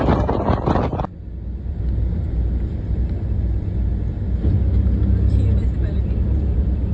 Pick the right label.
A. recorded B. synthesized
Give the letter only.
A